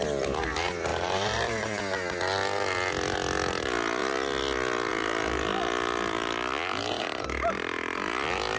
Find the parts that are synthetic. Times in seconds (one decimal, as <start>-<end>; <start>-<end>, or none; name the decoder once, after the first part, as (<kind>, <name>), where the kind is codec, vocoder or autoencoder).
0.9-1.8 (vocoder, BigVGAN v2)

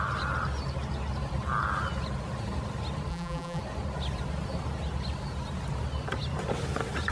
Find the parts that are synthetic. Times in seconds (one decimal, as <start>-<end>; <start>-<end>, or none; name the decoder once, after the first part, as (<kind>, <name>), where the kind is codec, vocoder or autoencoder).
3.1-3.6 (vocoder, BigVGAN v2)

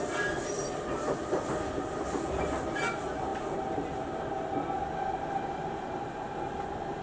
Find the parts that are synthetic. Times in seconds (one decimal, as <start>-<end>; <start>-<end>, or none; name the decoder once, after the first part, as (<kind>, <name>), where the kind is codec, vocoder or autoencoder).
none

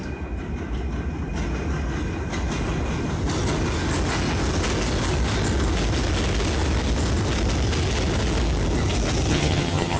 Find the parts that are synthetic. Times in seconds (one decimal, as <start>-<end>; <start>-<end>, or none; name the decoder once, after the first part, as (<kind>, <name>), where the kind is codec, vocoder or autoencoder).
9.3-10.0 (vocoder, HiFi-GAN)

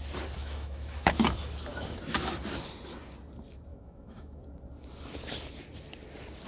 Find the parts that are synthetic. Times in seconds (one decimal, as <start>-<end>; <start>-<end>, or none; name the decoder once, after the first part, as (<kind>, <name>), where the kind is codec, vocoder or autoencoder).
0.4-1.1 (autoencoder, DAC-VAE); 3.7-4.4

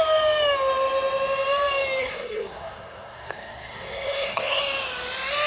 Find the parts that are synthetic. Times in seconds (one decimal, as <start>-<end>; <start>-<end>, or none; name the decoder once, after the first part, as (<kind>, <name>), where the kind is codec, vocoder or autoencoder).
2.0-4.6 (codec, SNAC)

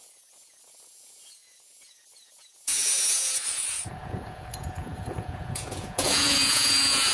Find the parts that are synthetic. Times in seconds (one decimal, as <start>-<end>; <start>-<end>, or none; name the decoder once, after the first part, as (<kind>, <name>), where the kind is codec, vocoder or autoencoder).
0.0-7.1 (vocoder, Vocos)